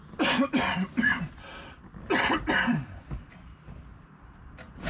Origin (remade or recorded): recorded